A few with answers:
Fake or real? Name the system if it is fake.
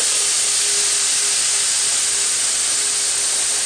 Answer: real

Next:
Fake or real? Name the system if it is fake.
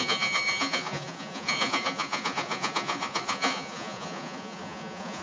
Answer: fake, vocoder, Vocos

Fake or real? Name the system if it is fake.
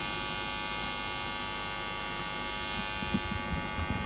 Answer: real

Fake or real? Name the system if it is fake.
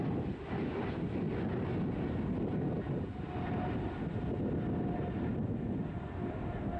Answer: real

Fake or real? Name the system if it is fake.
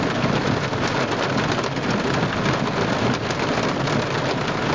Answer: real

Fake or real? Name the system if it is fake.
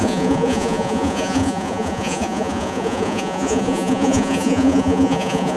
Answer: fake, vocoder, Vocos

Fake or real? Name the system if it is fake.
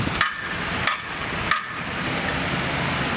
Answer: real